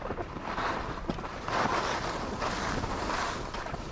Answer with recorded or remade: recorded